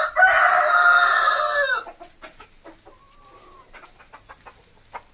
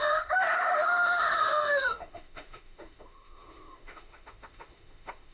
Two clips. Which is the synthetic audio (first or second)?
second